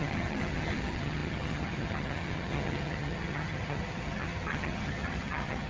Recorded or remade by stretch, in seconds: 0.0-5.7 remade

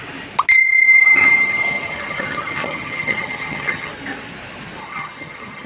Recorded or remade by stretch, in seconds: 0.0-0.5 recorded; 0.5-3.9 remade; 3.9-4.8 recorded; 4.8-5.7 remade

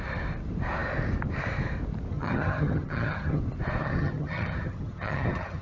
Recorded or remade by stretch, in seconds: 0.0-2.1 recorded; 2.1-3.4 remade; 3.4-3.8 recorded; 3.8-5.6 remade

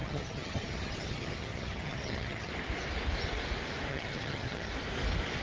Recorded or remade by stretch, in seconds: 0.0-2.5 remade; 2.5-3.9 recorded; 3.9-4.7 remade; 4.7-5.4 recorded

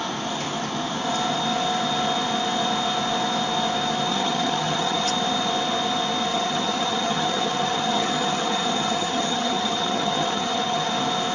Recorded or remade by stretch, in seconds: 0.0-4.1 recorded; 4.1-5.1 remade; 5.1-6.3 recorded; 6.3-10.9 remade; 10.9-11.3 recorded

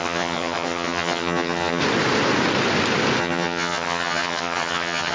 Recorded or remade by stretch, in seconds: 0.0-1.8 remade; 1.8-3.2 recorded; 3.2-5.1 remade